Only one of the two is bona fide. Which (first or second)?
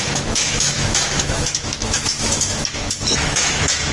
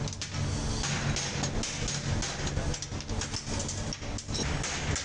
second